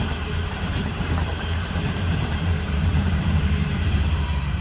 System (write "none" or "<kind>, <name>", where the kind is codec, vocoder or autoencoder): vocoder, BigVGAN v2